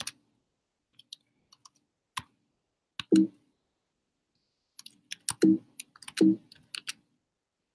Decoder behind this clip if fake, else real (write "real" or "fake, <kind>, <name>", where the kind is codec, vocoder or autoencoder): real